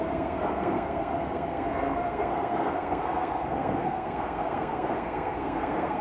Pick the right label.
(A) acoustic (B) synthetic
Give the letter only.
B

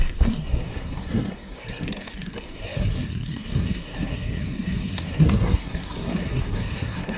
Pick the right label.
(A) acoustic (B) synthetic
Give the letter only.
B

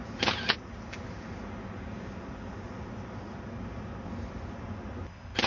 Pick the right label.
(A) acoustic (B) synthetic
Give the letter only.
A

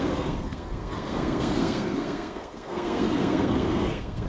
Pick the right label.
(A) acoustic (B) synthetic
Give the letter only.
B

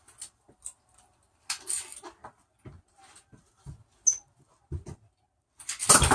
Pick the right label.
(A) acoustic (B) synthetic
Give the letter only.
A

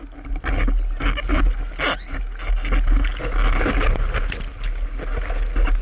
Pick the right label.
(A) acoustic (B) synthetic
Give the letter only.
A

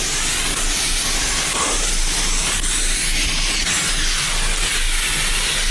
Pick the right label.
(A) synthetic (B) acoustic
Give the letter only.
B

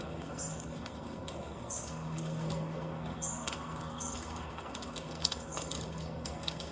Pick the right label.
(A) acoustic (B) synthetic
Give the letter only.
B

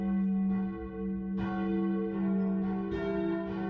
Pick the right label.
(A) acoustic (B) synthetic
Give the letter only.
A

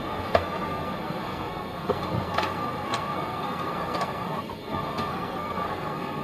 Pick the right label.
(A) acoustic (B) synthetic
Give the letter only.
B